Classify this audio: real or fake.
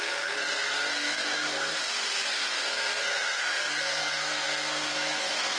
fake